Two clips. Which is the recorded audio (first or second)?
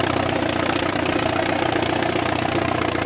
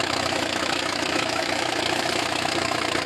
first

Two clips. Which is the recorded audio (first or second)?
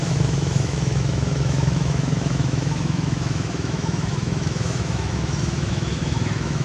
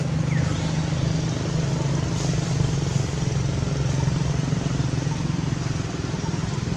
second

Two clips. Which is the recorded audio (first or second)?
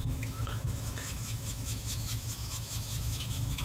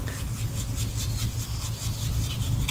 second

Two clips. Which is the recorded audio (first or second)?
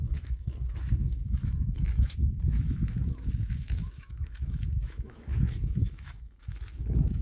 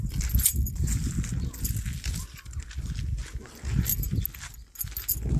second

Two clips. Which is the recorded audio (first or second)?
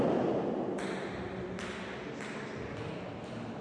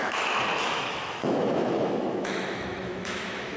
first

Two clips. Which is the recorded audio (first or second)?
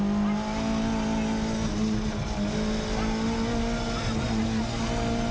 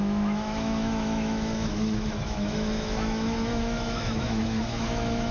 first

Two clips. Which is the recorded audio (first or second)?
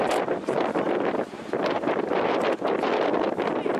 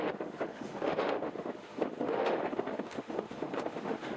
first